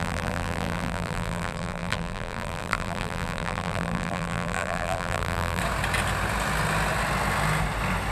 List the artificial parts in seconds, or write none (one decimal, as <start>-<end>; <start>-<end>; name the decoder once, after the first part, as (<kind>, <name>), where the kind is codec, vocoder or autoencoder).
0.0-5.6 (vocoder, BigVGAN v2)